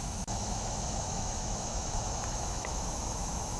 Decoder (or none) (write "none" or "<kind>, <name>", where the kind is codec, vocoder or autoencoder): autoencoder, DAC-VAE